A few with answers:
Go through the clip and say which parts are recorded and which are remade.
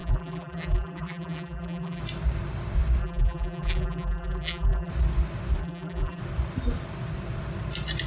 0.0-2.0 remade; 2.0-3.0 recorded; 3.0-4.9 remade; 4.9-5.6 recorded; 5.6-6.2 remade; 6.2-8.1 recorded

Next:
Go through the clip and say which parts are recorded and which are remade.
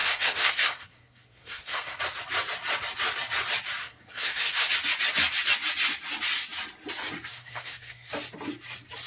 0.0-2.0 remade; 2.0-3.8 recorded; 3.8-4.7 remade; 4.7-7.3 recorded; 7.3-8.1 remade; 8.1-9.1 recorded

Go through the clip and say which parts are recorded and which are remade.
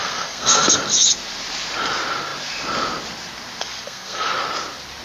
0.0-0.7 remade; 0.7-3.6 recorded; 3.6-4.3 remade; 4.3-5.0 recorded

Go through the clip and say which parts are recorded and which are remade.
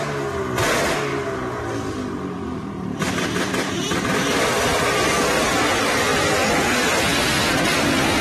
0.0-8.2 recorded